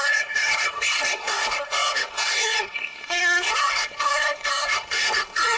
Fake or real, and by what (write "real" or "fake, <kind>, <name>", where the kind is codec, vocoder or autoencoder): fake, codec, SNAC